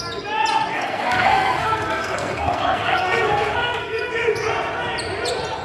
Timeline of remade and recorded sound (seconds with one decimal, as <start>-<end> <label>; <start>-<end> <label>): 0.0-0.7 recorded; 0.7-4.1 remade; 4.1-5.6 recorded